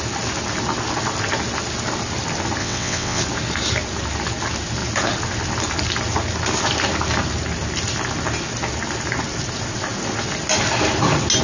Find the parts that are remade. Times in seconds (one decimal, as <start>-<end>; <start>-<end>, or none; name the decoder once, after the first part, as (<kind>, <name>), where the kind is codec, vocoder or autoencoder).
2.6-3.2 (vocoder, WaveNeXt)